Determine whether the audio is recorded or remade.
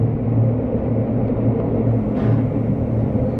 recorded